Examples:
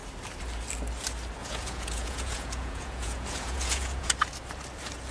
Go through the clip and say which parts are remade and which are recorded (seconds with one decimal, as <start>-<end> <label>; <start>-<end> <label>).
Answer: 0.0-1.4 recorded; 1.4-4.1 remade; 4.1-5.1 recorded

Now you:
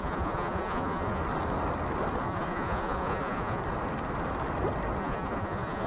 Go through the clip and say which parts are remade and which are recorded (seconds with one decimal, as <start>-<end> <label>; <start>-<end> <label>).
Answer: 0.0-1.2 remade; 1.2-2.2 recorded; 2.2-3.6 remade; 3.6-5.0 recorded; 5.0-5.9 remade

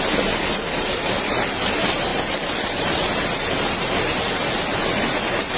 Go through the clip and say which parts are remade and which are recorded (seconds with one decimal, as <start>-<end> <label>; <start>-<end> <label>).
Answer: 0.0-5.6 recorded